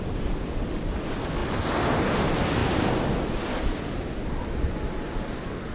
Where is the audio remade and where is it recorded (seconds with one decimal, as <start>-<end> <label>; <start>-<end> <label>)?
0.0-5.7 recorded